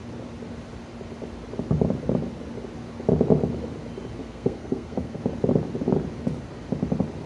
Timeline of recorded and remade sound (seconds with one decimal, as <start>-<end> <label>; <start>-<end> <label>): 0.0-4.2 recorded; 4.2-5.2 remade; 5.2-7.3 recorded

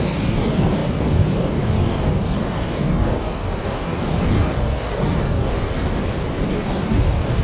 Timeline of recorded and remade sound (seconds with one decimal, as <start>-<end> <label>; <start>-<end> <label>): 0.0-6.0 remade; 6.0-6.5 recorded; 6.5-7.4 remade